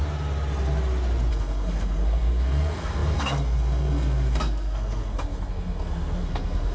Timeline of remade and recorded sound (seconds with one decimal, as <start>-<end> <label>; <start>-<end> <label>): 0.0-1.3 recorded; 1.3-6.7 remade